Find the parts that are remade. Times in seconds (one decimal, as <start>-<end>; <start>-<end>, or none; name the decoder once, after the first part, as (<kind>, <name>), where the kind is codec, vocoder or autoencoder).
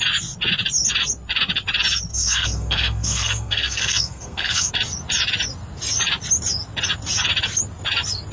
2.1-4.7 (codec, SNAC)